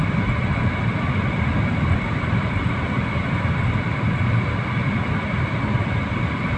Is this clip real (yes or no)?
no